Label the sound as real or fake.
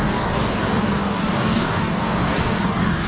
fake